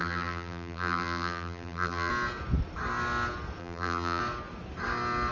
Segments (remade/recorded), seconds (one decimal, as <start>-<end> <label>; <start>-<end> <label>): 0.0-2.1 remade; 2.1-3.6 recorded; 3.6-4.2 remade; 4.2-5.3 recorded